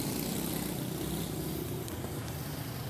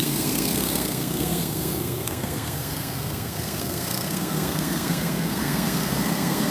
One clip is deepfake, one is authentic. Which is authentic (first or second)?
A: first